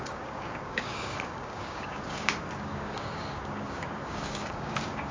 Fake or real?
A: fake